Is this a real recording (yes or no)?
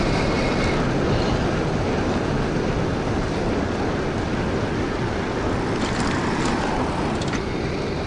yes